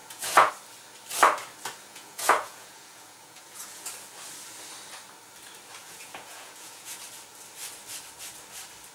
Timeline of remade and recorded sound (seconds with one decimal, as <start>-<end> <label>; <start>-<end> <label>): 0.0-0.5 remade; 0.5-1.9 recorded; 1.9-3.9 remade; 3.9-5.8 recorded; 5.8-7.0 remade; 7.0-8.9 recorded